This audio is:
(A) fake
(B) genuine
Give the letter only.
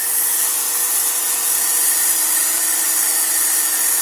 B